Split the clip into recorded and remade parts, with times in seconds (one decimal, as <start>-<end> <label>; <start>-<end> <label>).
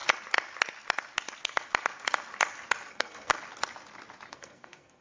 0.0-2.9 recorded; 2.9-3.3 remade; 3.3-4.3 recorded; 4.3-5.0 remade